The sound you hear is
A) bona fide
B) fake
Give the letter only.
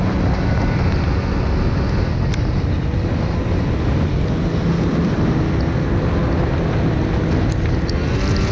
A